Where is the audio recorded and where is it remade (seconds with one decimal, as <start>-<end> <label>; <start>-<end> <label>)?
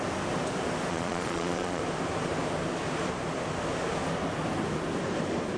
0.0-0.9 recorded; 0.9-1.8 remade; 1.8-5.6 recorded